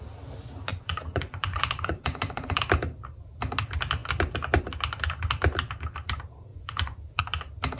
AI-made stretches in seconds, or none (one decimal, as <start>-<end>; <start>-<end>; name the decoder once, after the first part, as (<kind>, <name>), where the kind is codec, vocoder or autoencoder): 0.7-2.6 (vocoder, Vocos); 6.5-7.2